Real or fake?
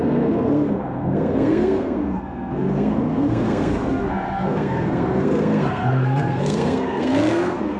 fake